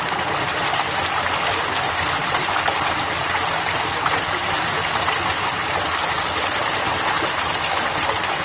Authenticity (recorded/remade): recorded